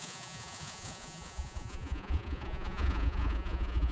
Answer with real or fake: fake